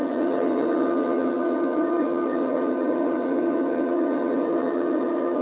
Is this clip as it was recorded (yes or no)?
no